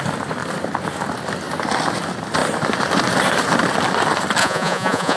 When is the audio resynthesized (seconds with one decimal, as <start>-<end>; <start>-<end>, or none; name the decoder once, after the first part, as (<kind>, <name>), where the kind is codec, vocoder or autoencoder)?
4.4-5.2 (vocoder, Vocos)